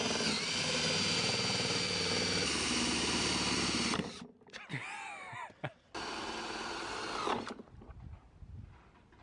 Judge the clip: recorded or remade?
recorded